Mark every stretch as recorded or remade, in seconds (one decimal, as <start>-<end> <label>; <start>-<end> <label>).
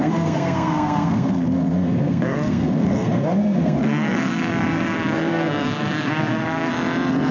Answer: 0.0-6.7 remade; 6.7-7.3 recorded